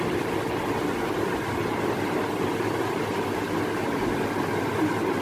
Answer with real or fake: real